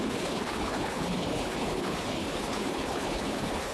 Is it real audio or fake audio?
fake